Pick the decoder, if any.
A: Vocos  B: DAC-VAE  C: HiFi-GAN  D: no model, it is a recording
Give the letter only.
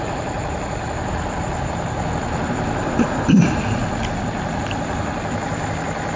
D